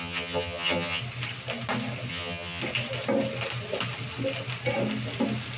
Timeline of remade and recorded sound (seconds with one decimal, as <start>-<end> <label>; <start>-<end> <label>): 0.0-1.0 remade; 1.0-2.1 recorded; 2.1-2.6 remade; 2.6-5.6 recorded